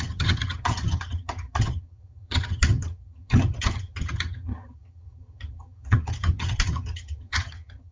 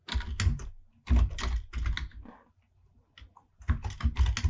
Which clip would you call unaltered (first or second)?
second